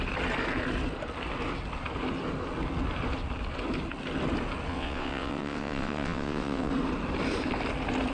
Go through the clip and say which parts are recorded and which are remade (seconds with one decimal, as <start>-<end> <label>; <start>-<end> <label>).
0.0-4.7 recorded; 4.7-6.7 remade; 6.7-8.1 recorded